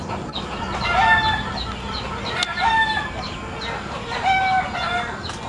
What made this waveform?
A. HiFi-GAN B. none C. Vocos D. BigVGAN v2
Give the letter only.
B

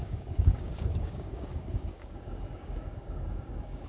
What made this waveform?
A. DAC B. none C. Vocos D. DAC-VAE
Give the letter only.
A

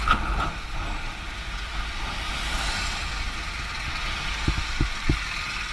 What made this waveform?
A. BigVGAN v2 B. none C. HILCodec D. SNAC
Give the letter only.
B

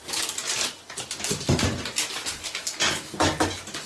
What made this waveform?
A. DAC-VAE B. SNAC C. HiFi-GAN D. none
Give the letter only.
D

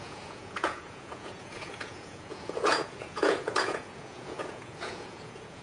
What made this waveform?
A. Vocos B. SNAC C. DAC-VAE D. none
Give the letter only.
A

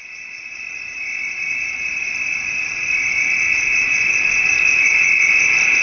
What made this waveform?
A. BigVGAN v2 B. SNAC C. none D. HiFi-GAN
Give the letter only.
C